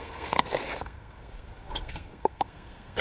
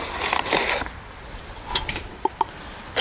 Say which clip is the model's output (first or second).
first